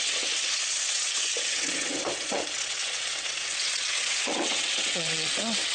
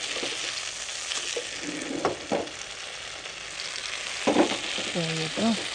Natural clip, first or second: second